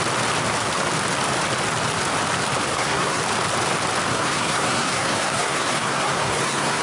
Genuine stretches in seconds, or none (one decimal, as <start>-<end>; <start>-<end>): 0.0-2.7; 3.2-4.1